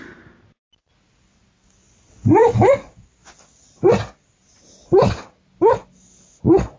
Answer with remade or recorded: recorded